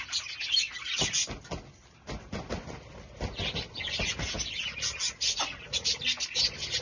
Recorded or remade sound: recorded